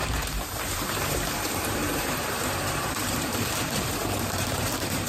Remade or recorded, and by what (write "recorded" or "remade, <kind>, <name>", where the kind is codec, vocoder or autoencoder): remade, vocoder, BigVGAN v2